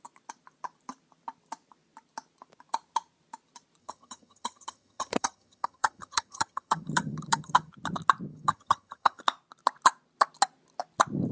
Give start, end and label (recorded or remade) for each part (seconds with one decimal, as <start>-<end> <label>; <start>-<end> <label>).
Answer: 0.0-3.8 recorded; 3.8-7.7 remade; 7.7-8.3 recorded; 8.3-9.2 remade; 9.2-11.3 recorded